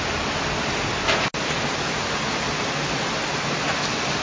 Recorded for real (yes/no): yes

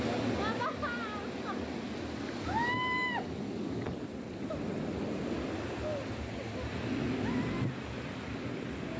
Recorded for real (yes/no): yes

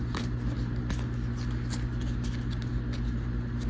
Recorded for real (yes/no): yes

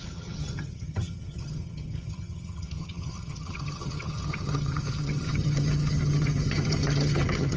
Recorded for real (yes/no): no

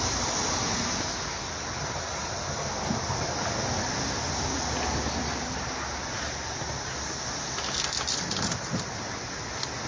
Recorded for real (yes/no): yes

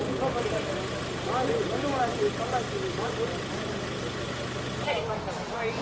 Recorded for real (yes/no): yes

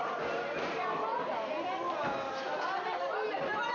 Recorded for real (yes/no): yes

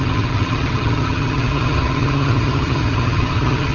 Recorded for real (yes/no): no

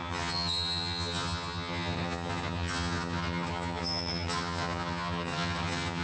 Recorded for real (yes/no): no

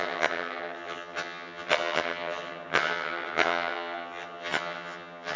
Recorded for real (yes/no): no